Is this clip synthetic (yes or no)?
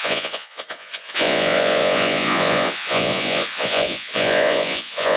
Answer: yes